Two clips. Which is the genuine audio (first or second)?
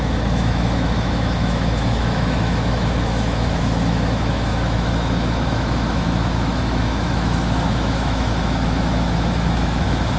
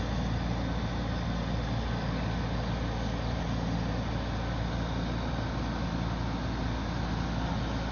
second